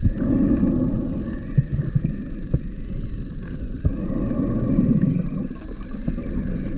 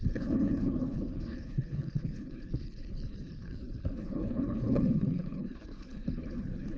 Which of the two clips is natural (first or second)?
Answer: first